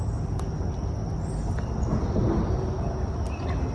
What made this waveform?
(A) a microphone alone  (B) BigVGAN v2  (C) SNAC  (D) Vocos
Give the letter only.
A